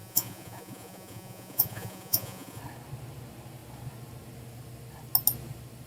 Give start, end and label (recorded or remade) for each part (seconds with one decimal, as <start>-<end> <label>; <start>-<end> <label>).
0.0-2.6 remade; 2.6-5.9 recorded

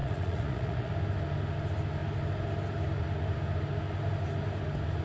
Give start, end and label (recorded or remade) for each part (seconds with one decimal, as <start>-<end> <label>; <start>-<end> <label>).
0.0-0.9 remade; 0.9-5.0 recorded

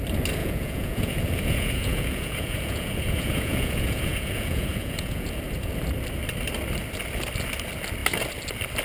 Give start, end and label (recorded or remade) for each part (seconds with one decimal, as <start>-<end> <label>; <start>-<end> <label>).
0.0-0.4 recorded; 0.4-5.3 remade; 5.3-8.8 recorded

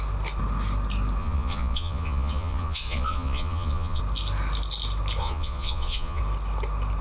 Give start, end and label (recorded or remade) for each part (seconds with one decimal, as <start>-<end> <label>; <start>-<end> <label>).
0.0-1.2 recorded; 1.2-4.0 remade; 4.0-5.2 recorded; 5.2-6.2 remade; 6.2-7.0 recorded

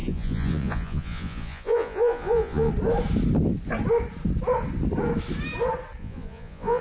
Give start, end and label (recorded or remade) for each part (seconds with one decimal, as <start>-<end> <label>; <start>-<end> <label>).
0.0-2.7 remade; 2.7-6.0 recorded; 6.0-6.8 remade

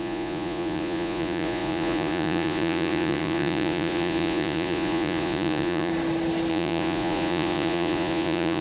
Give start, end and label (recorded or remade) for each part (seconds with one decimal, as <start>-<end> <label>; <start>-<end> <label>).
0.0-5.9 remade; 5.9-6.5 recorded; 6.5-8.6 remade

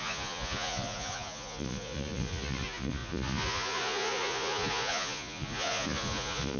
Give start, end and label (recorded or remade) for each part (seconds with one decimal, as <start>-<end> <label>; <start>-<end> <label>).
0.0-6.6 remade